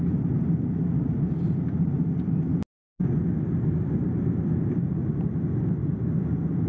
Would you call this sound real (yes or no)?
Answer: yes